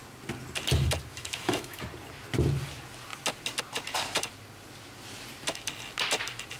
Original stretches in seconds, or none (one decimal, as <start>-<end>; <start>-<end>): 0.0-1.1; 1.8-6.6